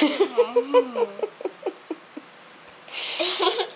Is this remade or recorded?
recorded